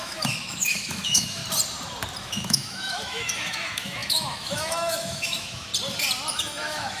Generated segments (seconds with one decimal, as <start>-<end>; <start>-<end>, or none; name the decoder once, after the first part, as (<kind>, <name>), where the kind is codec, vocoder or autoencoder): 0.0-1.4 (autoencoder, DAC-VAE); 2.2-5.7; 6.3-7.0